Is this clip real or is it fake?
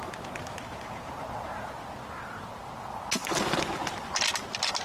real